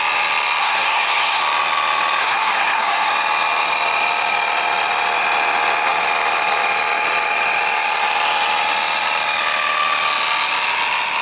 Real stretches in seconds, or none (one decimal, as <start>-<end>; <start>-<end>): 0.0-0.6; 1.4-2.2; 3.1-11.2